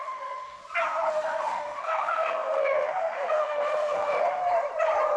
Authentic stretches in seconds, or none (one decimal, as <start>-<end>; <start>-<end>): 0.6-1.1; 4.4-5.2